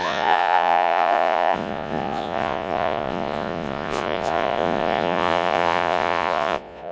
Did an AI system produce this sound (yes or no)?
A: yes